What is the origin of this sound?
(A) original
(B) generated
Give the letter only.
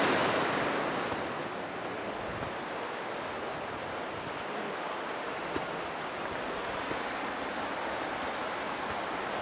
A